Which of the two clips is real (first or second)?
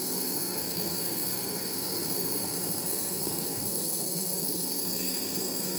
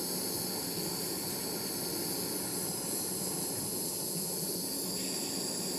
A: second